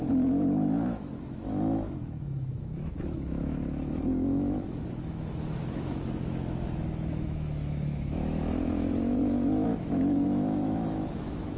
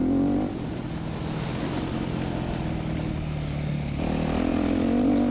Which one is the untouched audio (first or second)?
second